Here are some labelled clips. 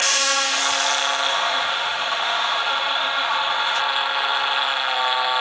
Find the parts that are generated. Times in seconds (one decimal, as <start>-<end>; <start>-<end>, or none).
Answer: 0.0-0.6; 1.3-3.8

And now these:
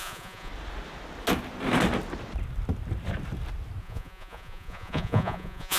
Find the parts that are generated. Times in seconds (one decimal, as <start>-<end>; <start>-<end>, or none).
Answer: 0.0-0.5; 3.8-5.8

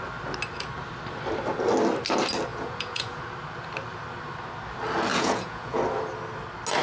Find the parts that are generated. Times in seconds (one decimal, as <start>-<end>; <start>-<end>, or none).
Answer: 2.5-3.2; 5.1-5.8

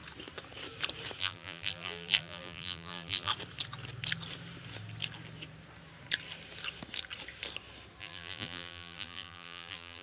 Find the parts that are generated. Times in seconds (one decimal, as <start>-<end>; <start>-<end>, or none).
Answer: 1.2-3.3; 8.0-10.0